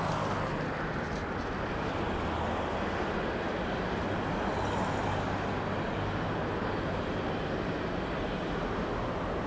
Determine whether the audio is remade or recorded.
recorded